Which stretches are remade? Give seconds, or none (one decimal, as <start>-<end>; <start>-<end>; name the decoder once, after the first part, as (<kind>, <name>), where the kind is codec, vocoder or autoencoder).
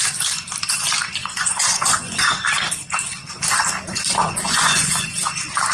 1.2-2.3 (vocoder, Vocos); 4.2-5.3